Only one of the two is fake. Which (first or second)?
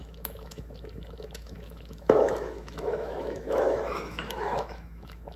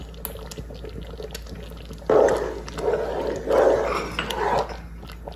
first